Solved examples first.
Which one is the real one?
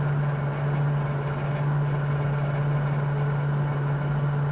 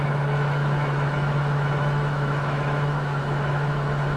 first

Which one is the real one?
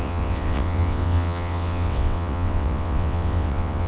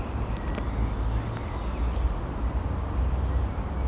second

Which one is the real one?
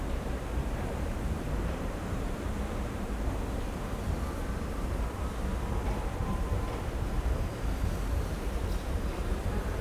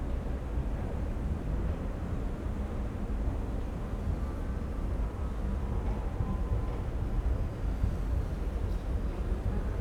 second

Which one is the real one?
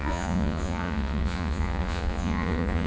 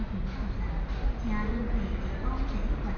second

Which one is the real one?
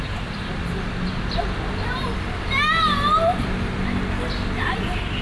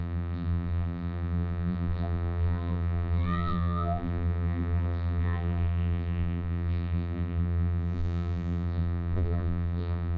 first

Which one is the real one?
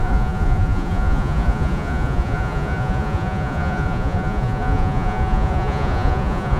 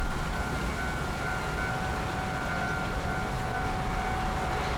second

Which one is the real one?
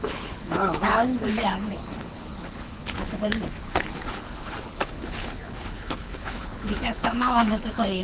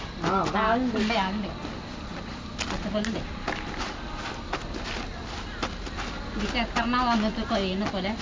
second